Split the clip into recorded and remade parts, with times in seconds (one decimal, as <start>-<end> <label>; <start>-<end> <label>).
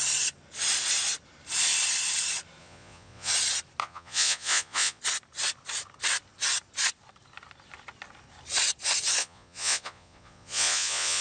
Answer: 0.0-2.6 recorded; 2.6-3.3 remade; 3.3-3.8 recorded; 3.8-5.0 remade; 5.0-9.2 recorded; 9.2-11.2 remade